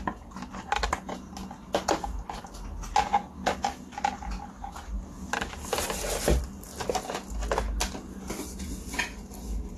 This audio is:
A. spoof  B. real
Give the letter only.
B